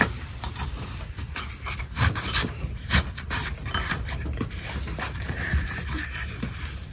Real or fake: fake